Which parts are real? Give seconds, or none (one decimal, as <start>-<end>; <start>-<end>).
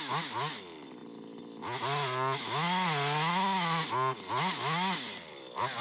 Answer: 0.0-5.8